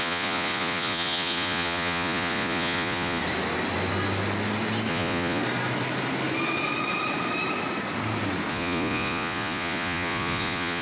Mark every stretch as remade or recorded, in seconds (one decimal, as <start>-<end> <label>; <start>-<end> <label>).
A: 0.0-3.2 remade; 3.2-4.9 recorded; 4.9-5.4 remade; 5.4-8.5 recorded; 8.5-10.8 remade